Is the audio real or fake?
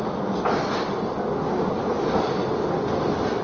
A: real